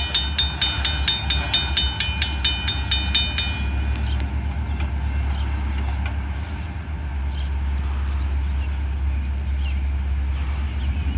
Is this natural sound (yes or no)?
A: yes